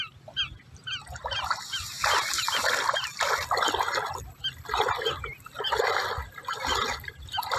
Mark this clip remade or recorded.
recorded